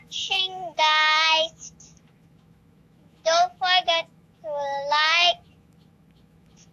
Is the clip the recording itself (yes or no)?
no